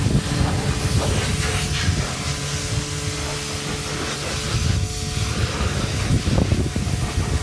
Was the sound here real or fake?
real